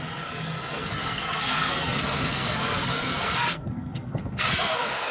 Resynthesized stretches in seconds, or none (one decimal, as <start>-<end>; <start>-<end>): 0.0-5.1